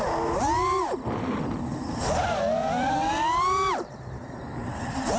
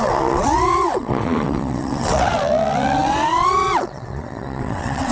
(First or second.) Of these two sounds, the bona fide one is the first